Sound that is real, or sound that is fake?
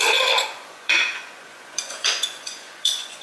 fake